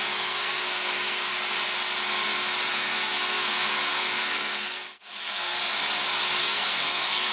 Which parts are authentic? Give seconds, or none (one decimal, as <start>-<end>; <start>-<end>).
1.3-2.7; 5.6-6.4